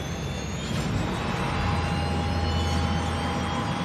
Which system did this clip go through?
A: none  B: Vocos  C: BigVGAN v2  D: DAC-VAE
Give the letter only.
A